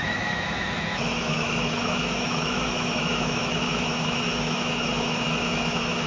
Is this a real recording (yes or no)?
no